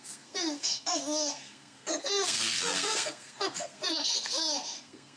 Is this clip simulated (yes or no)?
yes